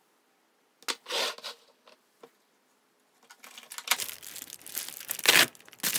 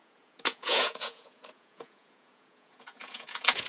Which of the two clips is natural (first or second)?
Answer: first